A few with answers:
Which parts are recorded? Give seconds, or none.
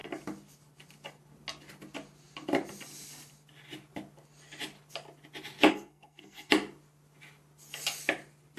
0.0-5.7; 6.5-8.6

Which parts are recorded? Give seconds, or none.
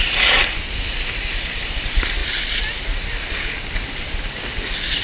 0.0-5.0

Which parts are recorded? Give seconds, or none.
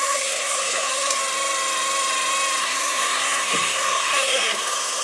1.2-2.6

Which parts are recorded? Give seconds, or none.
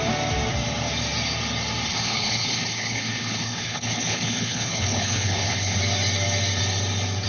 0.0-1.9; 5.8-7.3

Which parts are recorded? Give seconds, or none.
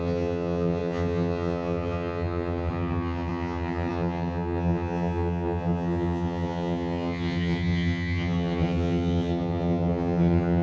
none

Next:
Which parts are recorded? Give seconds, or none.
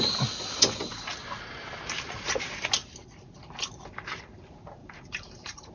0.0-4.8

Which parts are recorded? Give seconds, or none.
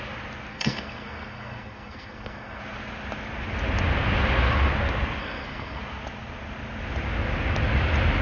0.0-0.5; 2.6-5.2; 5.8-8.2